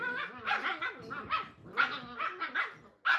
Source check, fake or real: real